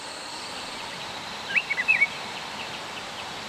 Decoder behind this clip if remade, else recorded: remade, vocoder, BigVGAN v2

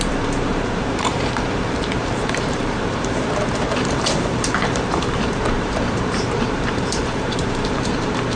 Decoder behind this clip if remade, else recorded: remade, vocoder, BigVGAN v2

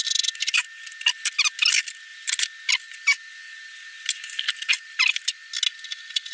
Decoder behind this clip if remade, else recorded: recorded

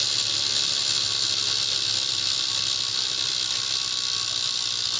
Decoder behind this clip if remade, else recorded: recorded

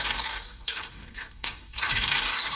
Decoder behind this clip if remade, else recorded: remade, codec, DAC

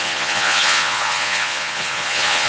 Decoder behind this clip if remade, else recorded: remade, vocoder, Vocos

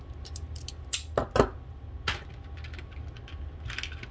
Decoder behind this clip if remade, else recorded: recorded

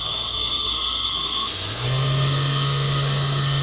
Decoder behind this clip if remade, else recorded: remade, codec, SNAC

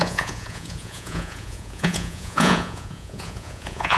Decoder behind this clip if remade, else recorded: remade, vocoder, Vocos